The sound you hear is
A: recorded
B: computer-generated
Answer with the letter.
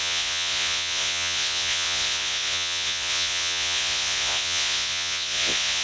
B